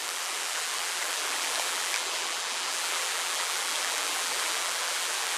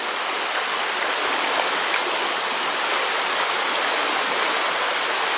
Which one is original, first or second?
second